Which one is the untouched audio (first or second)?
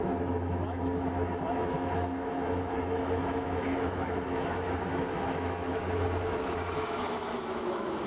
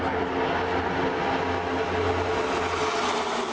second